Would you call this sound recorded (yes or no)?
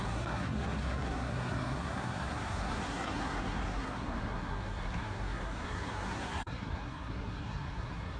no